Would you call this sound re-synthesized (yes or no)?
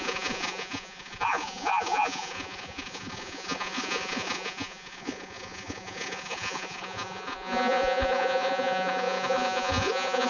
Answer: yes